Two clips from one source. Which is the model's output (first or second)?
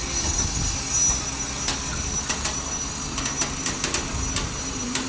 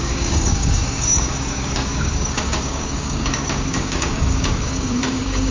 second